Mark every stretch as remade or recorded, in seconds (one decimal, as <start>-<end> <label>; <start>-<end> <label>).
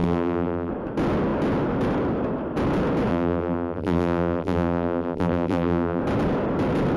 0.0-0.7 remade; 0.7-3.1 recorded; 3.1-6.0 remade; 6.0-7.0 recorded